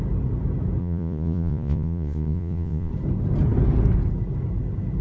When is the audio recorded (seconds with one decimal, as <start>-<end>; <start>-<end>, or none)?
0.0-0.8; 2.9-5.0